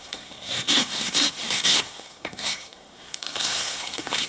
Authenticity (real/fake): fake